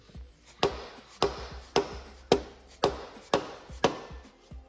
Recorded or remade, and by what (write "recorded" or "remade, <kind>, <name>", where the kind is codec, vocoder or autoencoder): recorded